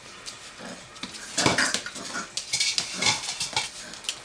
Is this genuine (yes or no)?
yes